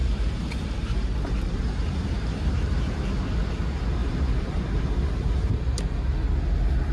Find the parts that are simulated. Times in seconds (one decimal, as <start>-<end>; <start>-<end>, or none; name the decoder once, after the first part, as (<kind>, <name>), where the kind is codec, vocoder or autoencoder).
0.0-3.2 (vocoder, BigVGAN v2); 4.0-5.5